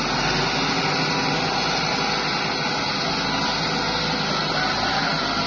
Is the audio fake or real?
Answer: real